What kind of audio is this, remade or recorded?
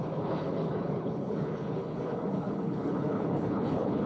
remade